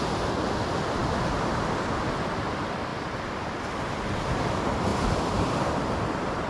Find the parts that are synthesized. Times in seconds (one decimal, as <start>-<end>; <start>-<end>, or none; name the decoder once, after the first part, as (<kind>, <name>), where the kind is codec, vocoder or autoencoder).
1.0-2.2 (vocoder, BigVGAN v2); 2.9-3.6; 4.9-6.5